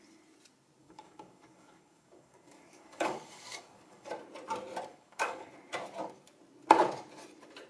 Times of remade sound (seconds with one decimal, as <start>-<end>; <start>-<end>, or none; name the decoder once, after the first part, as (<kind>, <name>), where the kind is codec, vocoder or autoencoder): 0.8-4.1 (codec, DAC); 4.9-5.5